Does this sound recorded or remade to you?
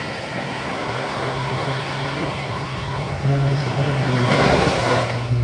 remade